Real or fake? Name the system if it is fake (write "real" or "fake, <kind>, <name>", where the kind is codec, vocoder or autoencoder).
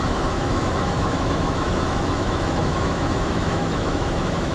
fake, autoencoder, DAC-VAE